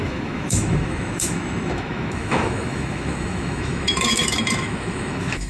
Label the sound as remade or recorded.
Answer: remade